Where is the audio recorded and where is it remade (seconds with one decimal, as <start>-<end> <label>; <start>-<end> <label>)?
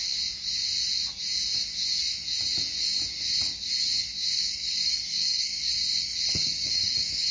0.0-4.4 recorded; 4.4-5.5 remade; 5.5-6.3 recorded; 6.3-7.3 remade